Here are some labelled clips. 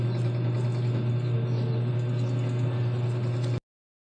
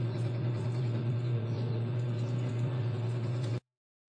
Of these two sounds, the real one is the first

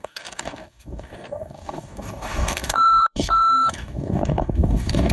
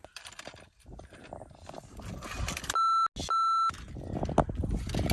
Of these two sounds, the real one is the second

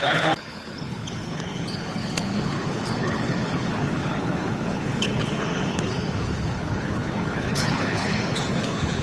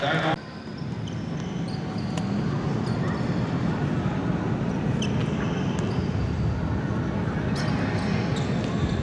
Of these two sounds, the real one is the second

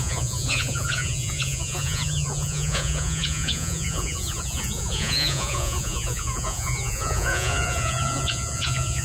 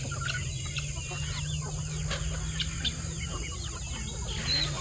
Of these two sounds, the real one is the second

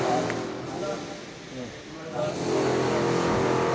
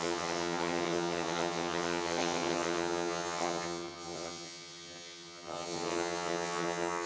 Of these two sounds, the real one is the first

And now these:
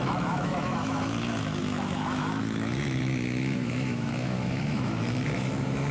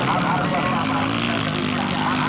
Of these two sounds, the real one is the second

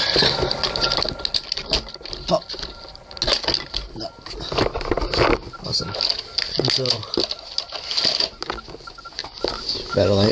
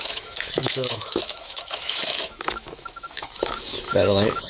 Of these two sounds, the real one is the first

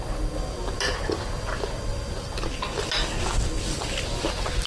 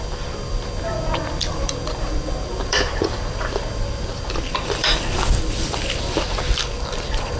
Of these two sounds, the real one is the first